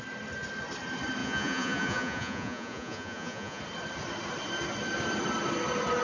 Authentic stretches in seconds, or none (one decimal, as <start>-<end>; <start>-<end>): 0.0-1.2; 3.6-6.0

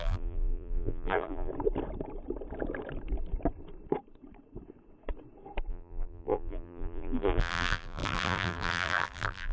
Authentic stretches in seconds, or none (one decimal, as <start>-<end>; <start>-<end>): 1.5-5.7

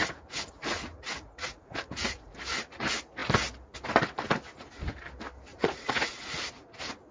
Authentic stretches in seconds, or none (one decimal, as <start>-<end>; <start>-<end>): 2.4-5.5; 6.1-7.1

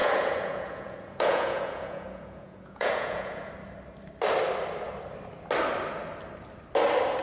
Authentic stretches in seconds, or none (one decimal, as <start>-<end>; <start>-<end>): 3.5-7.2

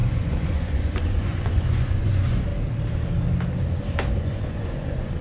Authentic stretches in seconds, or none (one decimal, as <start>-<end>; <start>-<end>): 2.5-4.2

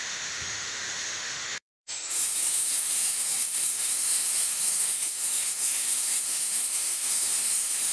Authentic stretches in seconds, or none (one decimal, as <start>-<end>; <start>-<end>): none

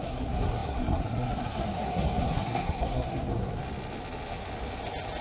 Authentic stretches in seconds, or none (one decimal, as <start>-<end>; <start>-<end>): 3.6-5.2

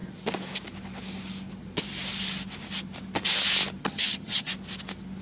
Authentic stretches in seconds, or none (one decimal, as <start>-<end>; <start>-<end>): 0.0-3.8; 4.5-5.2